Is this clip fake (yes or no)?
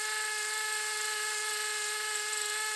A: no